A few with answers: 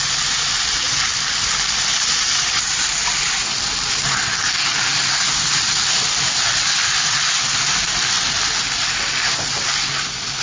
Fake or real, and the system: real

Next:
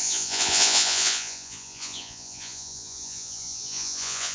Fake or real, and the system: fake, vocoder, Vocos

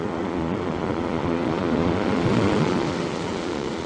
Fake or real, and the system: fake, vocoder, Vocos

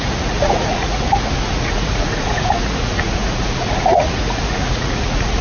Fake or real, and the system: fake, vocoder, Vocos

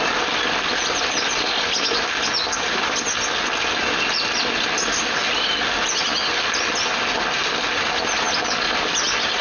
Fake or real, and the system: real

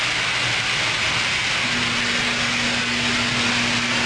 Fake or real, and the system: real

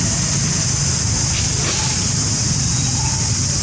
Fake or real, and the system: real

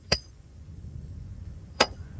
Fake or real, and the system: fake, vocoder, Vocos